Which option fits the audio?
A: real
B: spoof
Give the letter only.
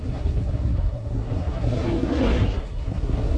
B